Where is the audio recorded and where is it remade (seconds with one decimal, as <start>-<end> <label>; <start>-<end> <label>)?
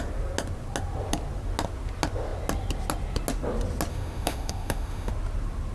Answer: 0.0-3.9 recorded; 3.9-5.1 remade; 5.1-5.7 recorded